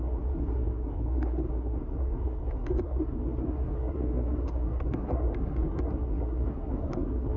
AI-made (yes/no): yes